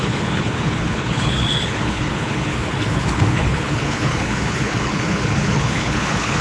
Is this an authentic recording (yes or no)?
no